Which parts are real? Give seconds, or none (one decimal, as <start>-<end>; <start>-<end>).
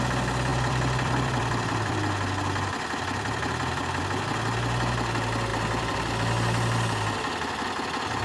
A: 0.0-0.5; 4.0-5.5; 6.1-8.2